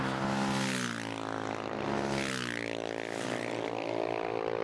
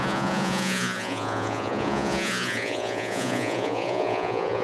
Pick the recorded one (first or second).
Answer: first